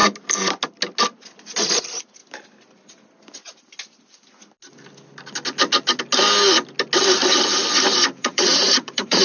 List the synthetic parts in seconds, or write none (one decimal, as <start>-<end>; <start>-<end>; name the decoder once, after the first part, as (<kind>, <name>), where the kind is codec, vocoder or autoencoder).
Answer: 8.2-9.2 (vocoder, Vocos)